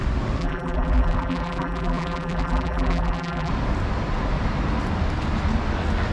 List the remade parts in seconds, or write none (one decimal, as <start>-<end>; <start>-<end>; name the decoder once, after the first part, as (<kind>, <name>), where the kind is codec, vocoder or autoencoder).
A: 0.4-3.5 (vocoder, BigVGAN v2)

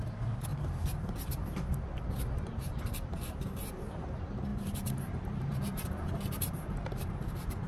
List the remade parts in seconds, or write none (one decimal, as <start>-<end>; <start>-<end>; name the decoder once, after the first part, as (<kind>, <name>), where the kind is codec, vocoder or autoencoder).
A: 0.5-4.0 (vocoder, BigVGAN v2); 4.5-7.3

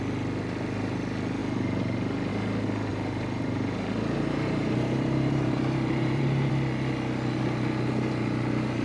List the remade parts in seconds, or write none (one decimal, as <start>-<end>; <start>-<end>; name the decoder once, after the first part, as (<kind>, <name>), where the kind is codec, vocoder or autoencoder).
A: 2.9-6.5 (vocoder, BigVGAN v2)

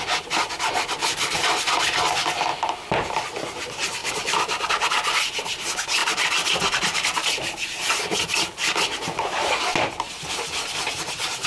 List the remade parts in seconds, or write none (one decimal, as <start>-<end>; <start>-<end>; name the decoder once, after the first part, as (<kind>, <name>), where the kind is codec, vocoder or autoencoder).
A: 1.0-1.6 (vocoder, BigVGAN v2); 4.0-4.7; 6.0-9.6

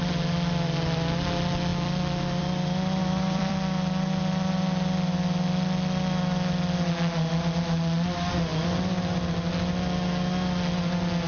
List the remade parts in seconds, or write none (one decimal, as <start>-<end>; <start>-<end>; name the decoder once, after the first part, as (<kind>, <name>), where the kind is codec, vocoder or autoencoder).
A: 3.0-3.5 (vocoder, BigVGAN v2)